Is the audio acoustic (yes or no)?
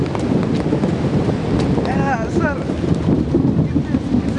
yes